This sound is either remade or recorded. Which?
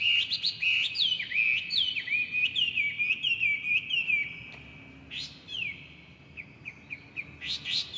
recorded